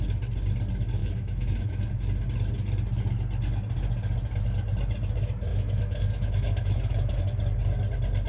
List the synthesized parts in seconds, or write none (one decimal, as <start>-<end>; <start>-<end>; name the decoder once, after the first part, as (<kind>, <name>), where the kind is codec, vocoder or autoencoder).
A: 1.0-1.9 (autoencoder, DAC-VAE); 5.5-7.2